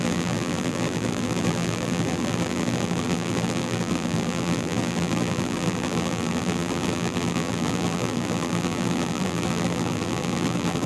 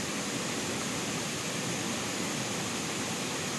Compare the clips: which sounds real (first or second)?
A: second